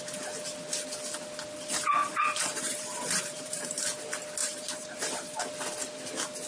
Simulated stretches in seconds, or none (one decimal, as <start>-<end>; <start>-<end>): 2.0-3.8; 4.4-5.4